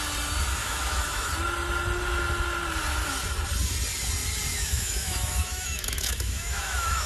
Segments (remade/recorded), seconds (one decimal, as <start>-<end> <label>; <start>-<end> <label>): 0.0-0.6 recorded; 0.6-1.3 remade; 1.3-4.5 recorded; 4.5-7.1 remade